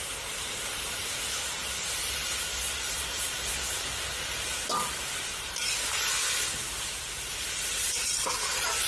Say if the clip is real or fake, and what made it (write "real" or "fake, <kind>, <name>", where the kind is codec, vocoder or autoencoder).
fake, vocoder, BigVGAN v2